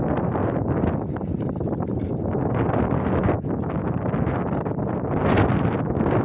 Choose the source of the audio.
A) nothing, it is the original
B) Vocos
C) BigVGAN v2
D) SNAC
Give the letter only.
A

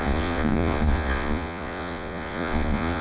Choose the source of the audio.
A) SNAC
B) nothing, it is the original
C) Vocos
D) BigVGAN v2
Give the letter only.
C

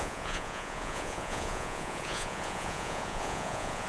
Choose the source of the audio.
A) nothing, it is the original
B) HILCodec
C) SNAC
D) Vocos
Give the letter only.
D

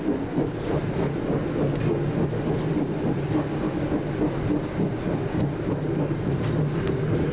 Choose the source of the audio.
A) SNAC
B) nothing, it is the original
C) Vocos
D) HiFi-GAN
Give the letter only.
B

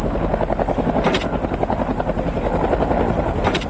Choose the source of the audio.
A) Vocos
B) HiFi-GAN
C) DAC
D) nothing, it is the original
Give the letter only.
D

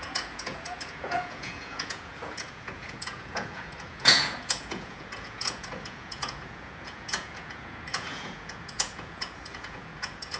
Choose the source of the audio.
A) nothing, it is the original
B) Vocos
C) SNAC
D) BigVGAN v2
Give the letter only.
B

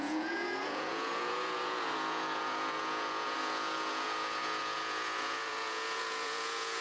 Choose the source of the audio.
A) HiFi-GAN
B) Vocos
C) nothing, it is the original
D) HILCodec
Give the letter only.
B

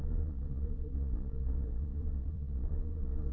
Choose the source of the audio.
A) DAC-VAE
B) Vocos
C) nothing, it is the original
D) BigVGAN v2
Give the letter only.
B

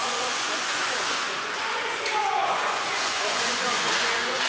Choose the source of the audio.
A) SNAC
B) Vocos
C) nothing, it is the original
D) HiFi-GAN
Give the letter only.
B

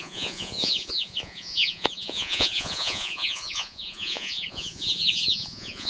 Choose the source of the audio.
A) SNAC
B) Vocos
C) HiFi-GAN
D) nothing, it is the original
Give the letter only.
B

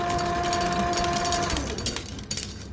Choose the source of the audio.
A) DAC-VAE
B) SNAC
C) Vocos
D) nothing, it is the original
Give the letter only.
D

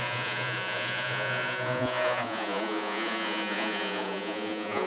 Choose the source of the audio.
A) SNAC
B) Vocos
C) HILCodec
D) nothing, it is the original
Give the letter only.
B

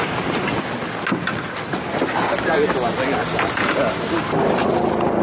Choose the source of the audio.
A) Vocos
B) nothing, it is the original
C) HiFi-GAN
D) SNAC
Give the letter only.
B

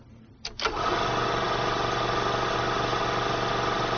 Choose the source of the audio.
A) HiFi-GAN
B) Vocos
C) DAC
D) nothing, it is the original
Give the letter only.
D